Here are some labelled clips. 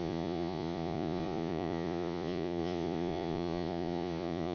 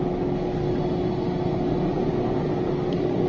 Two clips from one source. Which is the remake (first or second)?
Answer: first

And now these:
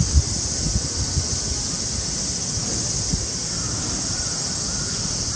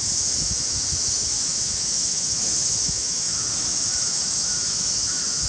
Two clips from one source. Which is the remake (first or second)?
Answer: second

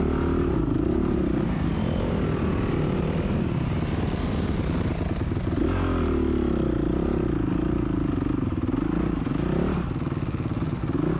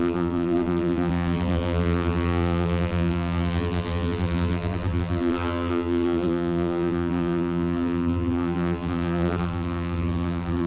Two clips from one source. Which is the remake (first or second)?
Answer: second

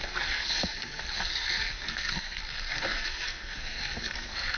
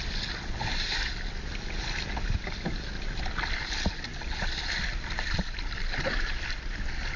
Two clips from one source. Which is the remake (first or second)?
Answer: first